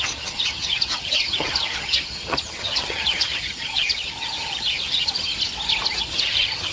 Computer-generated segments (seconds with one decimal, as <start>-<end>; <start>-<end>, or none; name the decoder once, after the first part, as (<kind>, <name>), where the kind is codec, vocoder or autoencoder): 0.0-5.3 (vocoder, HiFi-GAN); 6.0-6.7